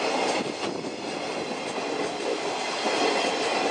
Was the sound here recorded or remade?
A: recorded